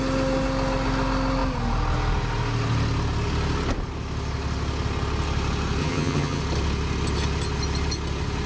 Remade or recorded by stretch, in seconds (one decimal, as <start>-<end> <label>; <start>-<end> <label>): 0.0-5.8 recorded; 5.8-6.4 remade; 6.4-8.5 recorded